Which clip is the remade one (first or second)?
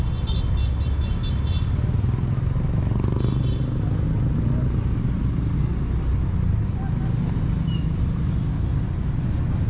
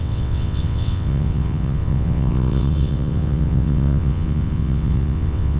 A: second